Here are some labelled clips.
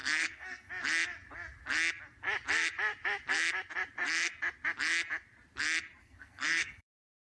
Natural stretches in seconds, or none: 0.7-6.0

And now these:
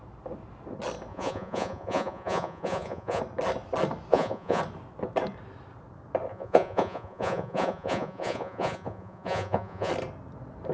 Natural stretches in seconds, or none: 0.0-1.1; 3.2-4.1; 4.6-6.3; 9.9-10.7